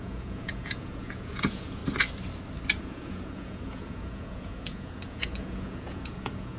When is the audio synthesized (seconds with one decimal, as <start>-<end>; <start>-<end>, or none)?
0.0-1.8; 2.8-6.6